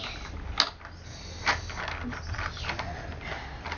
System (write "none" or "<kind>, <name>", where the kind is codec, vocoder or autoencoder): none